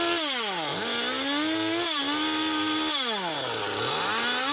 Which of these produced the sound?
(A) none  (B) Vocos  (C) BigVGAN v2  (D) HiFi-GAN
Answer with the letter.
A